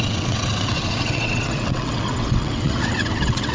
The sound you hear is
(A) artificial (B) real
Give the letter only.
A